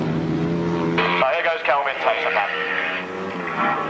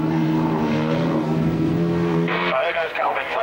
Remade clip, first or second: second